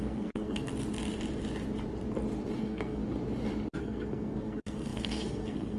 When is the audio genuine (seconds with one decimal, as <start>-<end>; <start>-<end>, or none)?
0.7-2.6; 3.0-3.8